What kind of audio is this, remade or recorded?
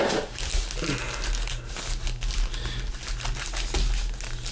recorded